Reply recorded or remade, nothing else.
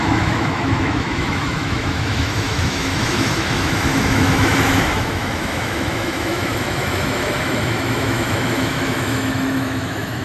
remade